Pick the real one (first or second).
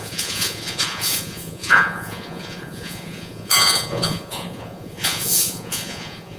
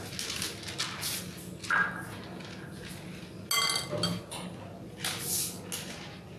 second